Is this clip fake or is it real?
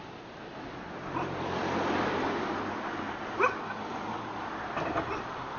fake